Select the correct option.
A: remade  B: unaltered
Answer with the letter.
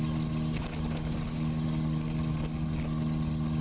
B